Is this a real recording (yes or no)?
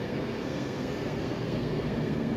no